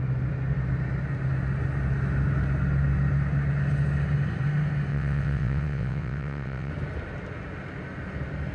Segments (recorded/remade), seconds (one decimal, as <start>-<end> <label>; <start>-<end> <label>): 0.0-4.9 recorded; 4.9-6.7 remade; 6.7-8.5 recorded